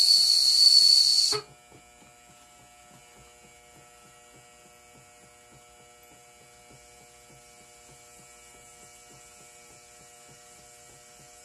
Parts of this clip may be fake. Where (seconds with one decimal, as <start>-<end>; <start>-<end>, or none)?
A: none